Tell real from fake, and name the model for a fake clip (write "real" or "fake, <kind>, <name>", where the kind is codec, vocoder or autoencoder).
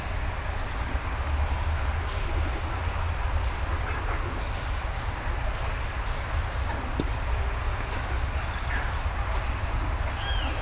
real